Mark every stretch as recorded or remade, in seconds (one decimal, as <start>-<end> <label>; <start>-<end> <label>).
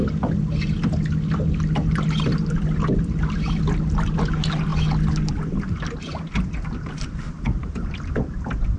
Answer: 0.0-8.8 recorded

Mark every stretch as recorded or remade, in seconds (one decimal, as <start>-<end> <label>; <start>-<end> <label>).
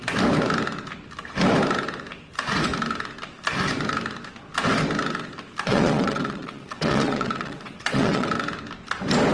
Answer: 0.0-5.7 recorded; 5.7-8.3 remade; 8.3-9.3 recorded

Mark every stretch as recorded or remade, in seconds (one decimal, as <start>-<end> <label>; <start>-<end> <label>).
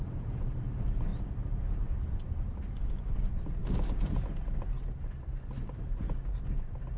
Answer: 0.0-7.0 recorded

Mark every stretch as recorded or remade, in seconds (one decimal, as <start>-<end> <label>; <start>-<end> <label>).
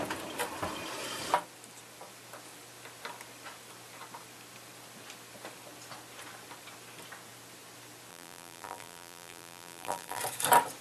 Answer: 0.0-8.1 recorded; 8.1-10.2 remade; 10.2-10.8 recorded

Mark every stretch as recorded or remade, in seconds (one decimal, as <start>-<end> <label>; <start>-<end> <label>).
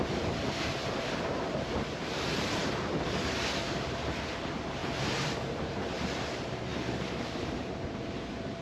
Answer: 0.0-8.6 remade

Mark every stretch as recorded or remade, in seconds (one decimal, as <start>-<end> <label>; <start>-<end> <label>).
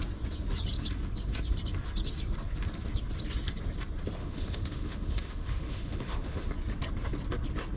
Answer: 0.0-4.2 recorded; 4.2-6.5 remade; 6.5-7.8 recorded